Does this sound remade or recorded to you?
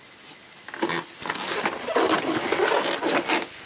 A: recorded